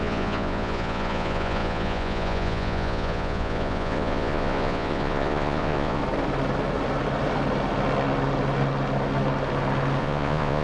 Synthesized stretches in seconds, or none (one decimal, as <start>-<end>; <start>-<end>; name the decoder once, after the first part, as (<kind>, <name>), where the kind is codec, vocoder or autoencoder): 0.0-6.0 (vocoder, Vocos); 10.0-10.6